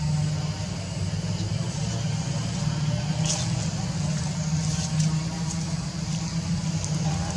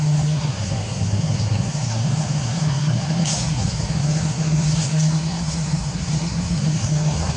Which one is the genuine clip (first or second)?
first